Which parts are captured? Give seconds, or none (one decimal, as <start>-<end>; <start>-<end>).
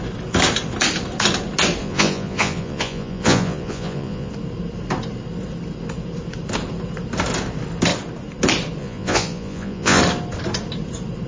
0.0-1.8; 4.3-8.8; 10.0-11.3